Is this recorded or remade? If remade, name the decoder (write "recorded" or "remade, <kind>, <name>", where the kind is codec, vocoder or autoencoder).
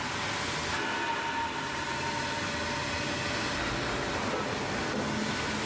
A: recorded